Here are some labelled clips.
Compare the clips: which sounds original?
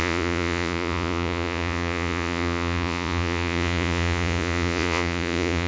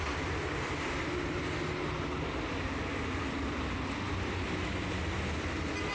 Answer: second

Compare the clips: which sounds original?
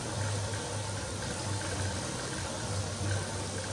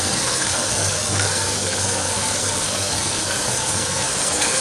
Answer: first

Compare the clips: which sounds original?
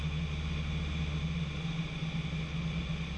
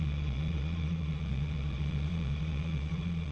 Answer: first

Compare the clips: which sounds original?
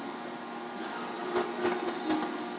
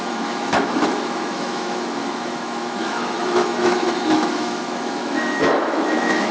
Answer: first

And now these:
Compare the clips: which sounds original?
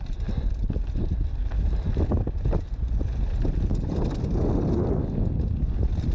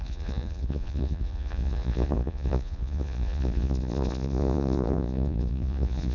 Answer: first